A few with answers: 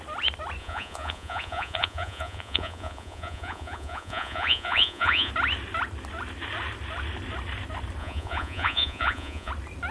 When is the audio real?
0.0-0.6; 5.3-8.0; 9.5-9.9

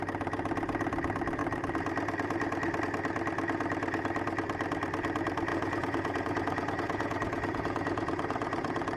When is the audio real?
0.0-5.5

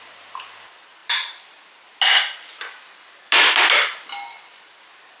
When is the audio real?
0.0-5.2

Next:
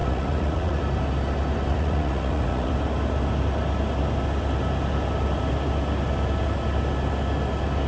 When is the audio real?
0.8-1.7; 2.7-7.9